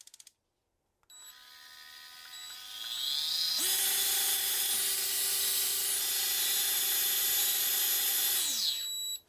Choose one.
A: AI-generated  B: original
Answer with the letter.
B